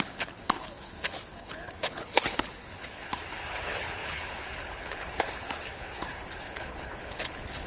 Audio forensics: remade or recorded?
remade